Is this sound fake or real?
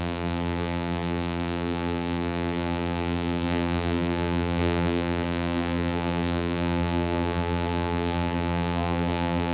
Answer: fake